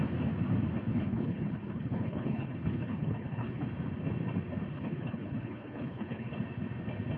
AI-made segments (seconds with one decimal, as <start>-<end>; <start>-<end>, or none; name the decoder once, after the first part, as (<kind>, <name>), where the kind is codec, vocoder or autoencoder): 0.9-3.6 (codec, HILCodec); 4.7-6.3